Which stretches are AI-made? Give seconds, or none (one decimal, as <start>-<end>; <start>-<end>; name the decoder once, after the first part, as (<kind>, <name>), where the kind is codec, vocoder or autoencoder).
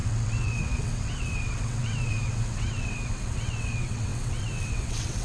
0.0-5.2 (vocoder, WaveNeXt)